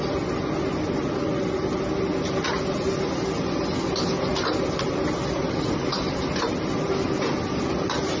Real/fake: real